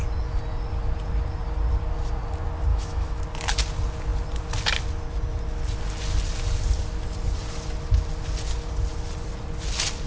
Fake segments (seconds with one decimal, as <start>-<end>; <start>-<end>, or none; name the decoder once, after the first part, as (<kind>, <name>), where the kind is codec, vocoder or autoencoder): 2.7-3.2 (autoencoder, DAC-VAE)